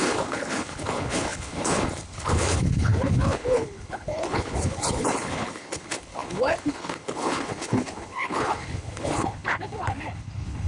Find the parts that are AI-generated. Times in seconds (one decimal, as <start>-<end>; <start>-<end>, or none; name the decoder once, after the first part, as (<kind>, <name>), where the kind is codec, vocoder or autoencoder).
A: 0.0-10.7 (codec, HILCodec)